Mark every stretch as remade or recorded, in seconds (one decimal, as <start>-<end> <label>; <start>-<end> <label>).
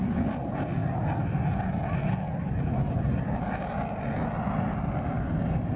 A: 0.0-5.8 recorded